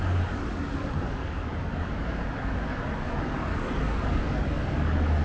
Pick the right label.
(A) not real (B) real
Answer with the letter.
A